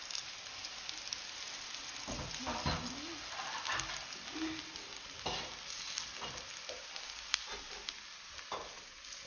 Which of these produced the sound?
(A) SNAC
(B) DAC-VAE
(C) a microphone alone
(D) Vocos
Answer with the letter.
C